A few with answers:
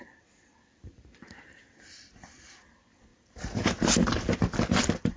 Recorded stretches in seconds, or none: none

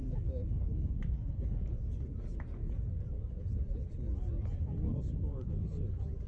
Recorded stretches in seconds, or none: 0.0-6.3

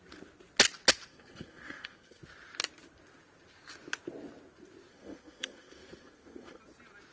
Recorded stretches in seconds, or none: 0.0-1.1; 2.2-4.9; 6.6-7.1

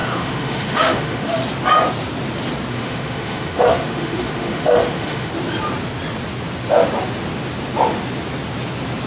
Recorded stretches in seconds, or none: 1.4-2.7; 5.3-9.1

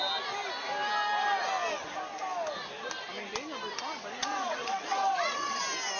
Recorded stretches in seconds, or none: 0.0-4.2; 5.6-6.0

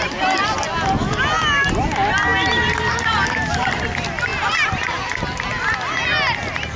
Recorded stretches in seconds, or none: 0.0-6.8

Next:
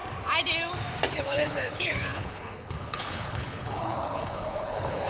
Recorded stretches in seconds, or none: 0.0-1.1